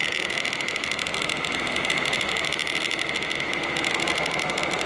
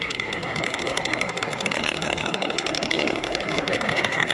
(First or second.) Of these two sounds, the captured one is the first